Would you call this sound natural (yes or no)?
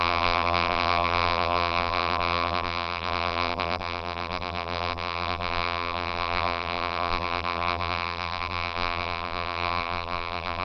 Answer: no